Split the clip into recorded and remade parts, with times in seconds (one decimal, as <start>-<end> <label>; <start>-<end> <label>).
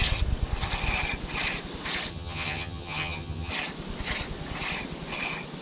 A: 0.0-2.1 recorded; 2.1-3.5 remade; 3.5-5.6 recorded